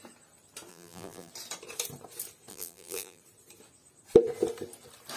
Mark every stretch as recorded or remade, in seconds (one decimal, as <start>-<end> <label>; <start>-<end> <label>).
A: 0.0-0.7 recorded; 0.7-1.3 remade; 1.3-2.5 recorded; 2.5-3.2 remade; 3.2-5.2 recorded